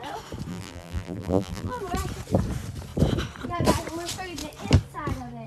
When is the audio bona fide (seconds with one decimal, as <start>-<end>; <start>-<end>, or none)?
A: 0.0-0.5; 1.8-5.5

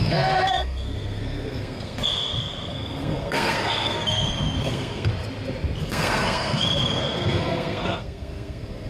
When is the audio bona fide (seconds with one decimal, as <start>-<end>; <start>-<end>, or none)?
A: 5.1-5.8

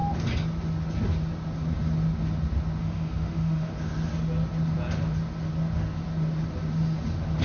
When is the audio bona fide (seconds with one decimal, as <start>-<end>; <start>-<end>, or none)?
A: 0.0-2.8; 3.7-7.4

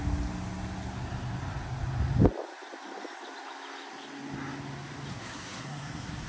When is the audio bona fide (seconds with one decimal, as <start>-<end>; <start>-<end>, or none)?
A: 0.0-5.1